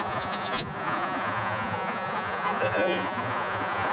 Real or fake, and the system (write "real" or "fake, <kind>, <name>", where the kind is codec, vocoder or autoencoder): fake, vocoder, Vocos